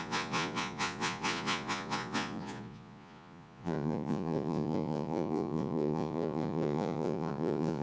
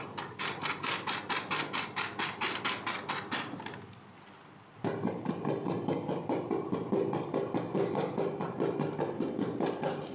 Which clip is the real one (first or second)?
second